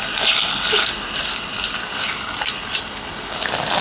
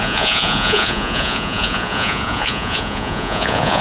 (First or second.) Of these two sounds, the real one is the first